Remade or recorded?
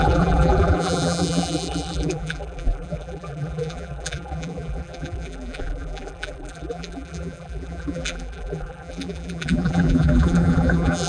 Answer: remade